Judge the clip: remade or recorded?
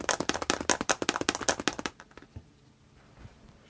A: recorded